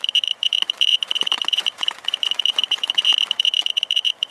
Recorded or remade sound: remade